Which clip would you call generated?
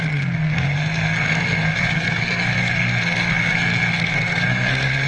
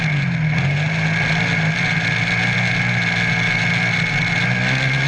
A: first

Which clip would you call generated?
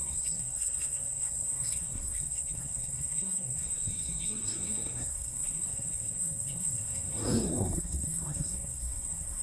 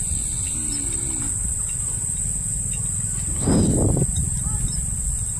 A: first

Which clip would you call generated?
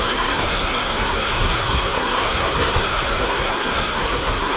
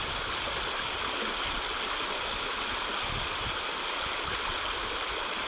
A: first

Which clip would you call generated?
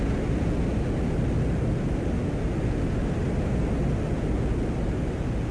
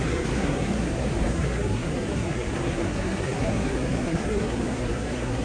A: second